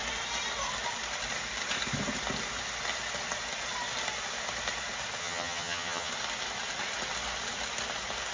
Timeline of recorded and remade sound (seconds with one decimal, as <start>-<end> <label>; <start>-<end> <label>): 0.0-5.2 recorded; 5.2-6.1 remade; 6.1-8.3 recorded